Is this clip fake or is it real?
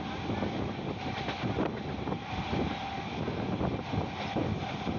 real